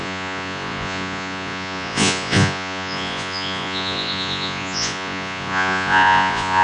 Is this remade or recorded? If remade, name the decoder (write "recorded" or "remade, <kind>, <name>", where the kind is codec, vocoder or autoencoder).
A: remade, vocoder, Vocos